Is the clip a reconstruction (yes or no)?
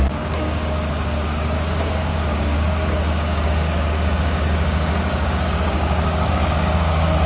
yes